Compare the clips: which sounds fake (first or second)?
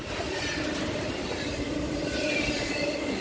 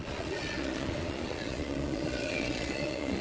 second